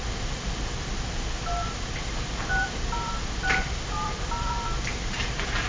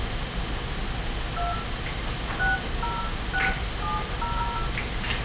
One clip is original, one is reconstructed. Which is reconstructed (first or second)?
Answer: first